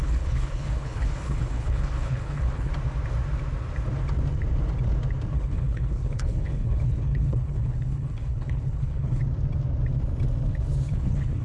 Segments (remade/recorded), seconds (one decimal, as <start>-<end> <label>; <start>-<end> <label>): 0.0-2.7 remade; 2.7-5.3 recorded; 5.3-9.2 remade; 9.2-10.9 recorded; 10.9-11.4 remade